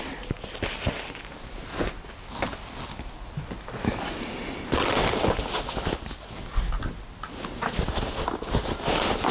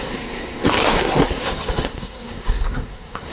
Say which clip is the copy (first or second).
second